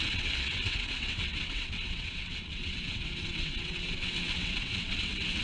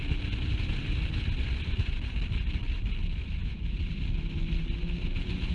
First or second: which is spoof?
first